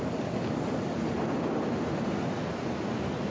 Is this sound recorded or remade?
recorded